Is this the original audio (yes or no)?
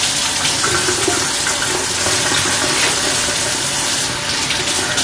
yes